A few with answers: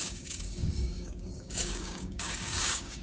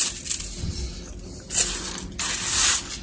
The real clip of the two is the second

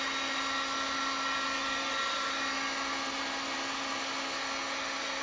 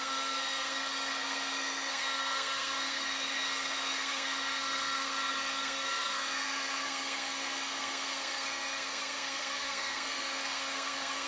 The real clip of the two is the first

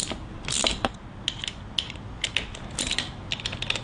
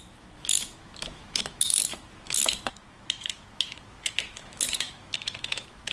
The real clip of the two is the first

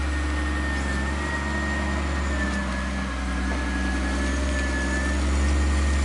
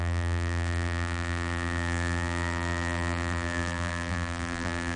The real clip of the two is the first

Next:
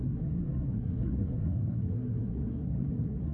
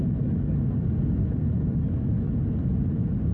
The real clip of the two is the second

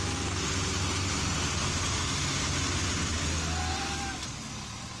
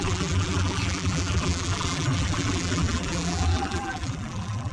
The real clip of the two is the first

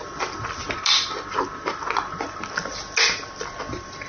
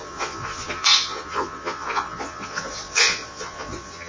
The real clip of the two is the first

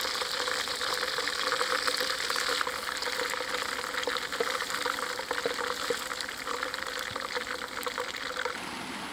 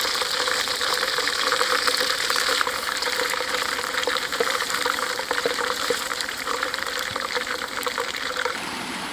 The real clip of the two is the first